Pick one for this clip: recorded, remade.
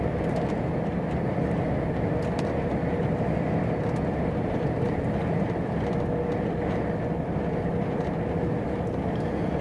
recorded